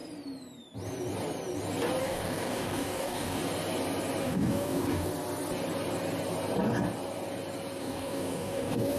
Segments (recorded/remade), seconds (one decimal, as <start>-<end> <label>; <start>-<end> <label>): 0.0-2.0 recorded; 2.0-3.4 remade; 3.4-4.2 recorded; 4.2-5.1 remade; 5.1-7.8 recorded; 7.8-9.0 remade